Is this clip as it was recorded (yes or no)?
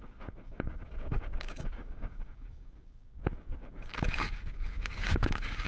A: no